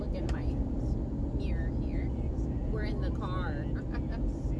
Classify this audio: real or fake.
real